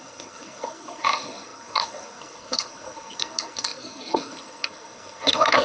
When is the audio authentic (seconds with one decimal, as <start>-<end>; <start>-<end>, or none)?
none